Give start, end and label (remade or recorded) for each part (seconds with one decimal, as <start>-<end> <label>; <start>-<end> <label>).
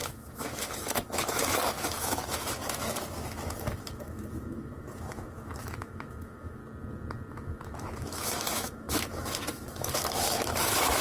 0.0-6.6 remade; 6.6-7.3 recorded; 7.3-11.0 remade